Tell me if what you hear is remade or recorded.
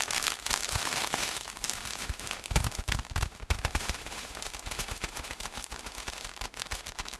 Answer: remade